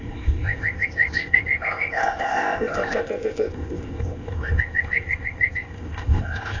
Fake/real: fake